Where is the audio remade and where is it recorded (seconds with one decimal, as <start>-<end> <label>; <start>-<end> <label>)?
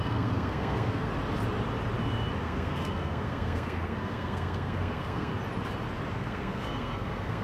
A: 0.0-1.1 remade; 1.1-2.4 recorded; 2.4-5.3 remade; 5.3-6.1 recorded; 6.1-7.4 remade